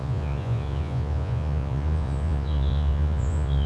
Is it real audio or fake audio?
fake